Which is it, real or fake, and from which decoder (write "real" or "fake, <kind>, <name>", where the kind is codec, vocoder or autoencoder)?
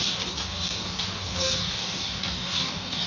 fake, codec, DAC